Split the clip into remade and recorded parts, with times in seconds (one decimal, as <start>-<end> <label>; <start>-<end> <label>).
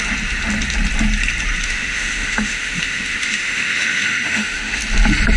0.0-1.6 recorded; 1.6-4.8 remade; 4.8-5.4 recorded